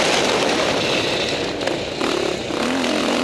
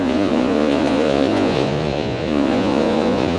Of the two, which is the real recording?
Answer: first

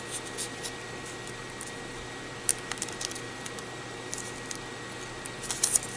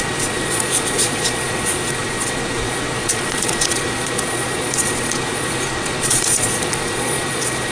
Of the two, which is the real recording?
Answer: first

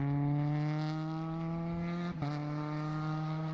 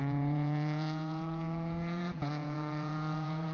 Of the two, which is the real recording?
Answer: first